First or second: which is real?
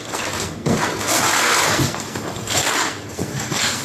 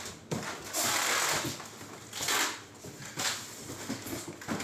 second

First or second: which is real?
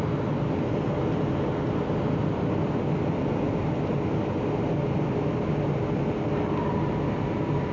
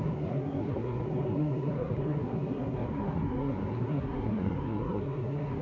first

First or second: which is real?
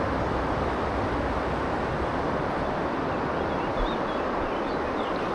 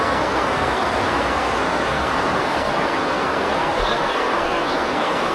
first